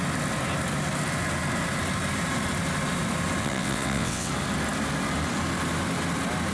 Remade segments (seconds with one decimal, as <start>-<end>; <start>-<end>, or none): 3.4-4.3

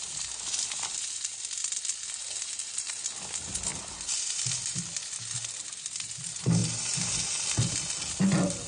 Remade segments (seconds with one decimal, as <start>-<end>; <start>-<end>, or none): none

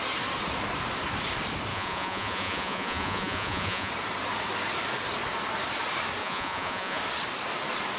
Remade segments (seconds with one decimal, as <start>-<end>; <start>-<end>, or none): 1.7-3.9; 6.2-7.0